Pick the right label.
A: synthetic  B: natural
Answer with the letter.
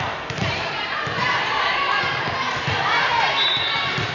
A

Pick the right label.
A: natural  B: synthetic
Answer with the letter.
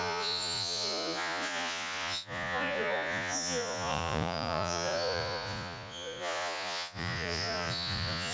B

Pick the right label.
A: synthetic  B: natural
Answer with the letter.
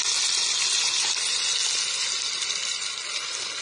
B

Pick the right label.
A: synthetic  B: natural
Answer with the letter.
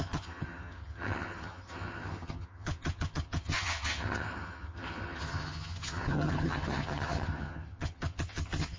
A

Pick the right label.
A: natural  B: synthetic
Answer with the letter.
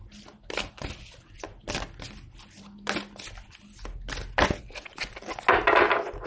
A